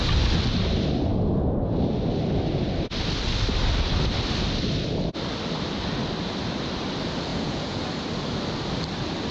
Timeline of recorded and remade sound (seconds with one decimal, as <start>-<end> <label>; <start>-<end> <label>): 0.0-7.3 recorded; 7.3-7.8 remade; 7.8-9.3 recorded